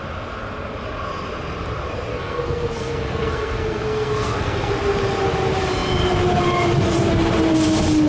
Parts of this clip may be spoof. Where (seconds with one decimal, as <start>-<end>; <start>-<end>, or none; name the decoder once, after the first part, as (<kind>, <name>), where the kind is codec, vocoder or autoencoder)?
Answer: 2.1-4.7 (codec, SNAC)